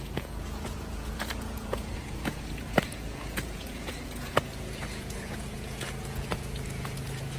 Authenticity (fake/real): fake